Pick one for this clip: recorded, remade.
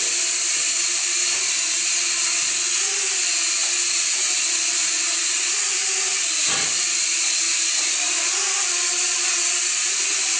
recorded